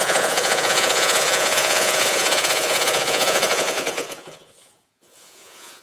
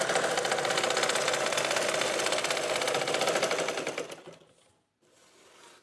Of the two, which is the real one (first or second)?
second